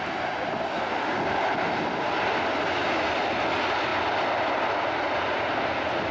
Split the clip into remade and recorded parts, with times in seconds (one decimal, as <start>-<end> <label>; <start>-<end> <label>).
0.0-6.1 recorded